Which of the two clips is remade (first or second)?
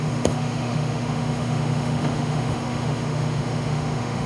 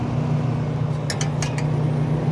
first